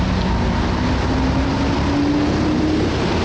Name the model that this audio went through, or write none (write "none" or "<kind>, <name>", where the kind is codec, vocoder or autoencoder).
none